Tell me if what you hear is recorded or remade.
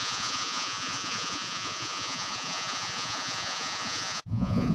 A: remade